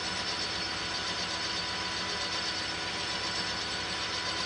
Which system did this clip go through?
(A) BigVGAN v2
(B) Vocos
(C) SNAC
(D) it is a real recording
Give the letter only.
D